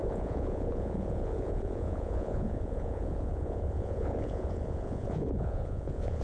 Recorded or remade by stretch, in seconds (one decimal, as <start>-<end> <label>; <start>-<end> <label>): 0.0-6.2 remade